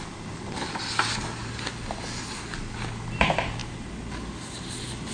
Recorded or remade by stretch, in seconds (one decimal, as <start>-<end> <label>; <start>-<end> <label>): 0.0-5.1 recorded